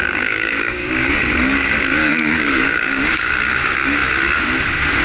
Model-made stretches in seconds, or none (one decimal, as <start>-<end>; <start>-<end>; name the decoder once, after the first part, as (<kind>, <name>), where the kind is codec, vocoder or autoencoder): 0.0-1.1 (codec, DAC); 1.9-3.3